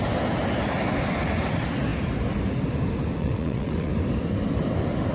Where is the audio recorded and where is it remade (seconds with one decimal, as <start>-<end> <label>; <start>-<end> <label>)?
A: 0.0-3.2 recorded; 3.2-3.9 remade; 3.9-5.1 recorded